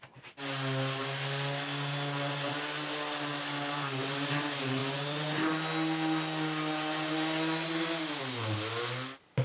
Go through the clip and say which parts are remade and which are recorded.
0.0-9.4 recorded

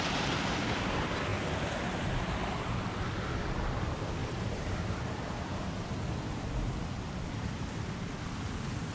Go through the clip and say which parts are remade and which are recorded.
0.0-4.2 recorded; 4.2-5.9 remade; 5.9-8.9 recorded

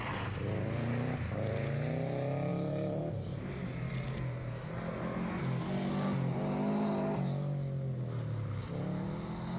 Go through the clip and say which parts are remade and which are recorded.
0.0-9.6 recorded

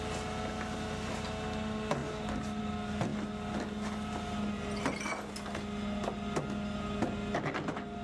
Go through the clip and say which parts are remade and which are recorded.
0.0-8.0 recorded